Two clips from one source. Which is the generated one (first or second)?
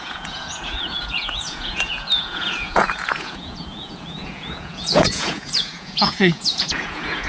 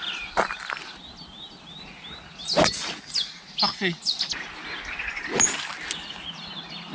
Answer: first